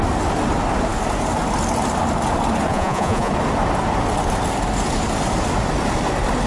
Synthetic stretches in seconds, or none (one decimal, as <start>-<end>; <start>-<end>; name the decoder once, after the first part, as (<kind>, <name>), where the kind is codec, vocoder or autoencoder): 2.7-3.3 (vocoder, Vocos)